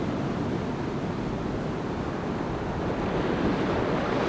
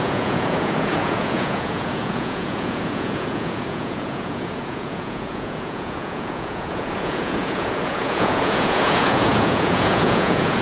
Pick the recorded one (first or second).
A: first